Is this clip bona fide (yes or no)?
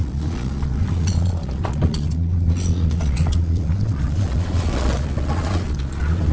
no